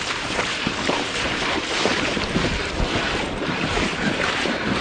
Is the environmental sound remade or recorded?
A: remade